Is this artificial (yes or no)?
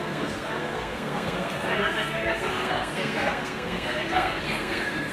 yes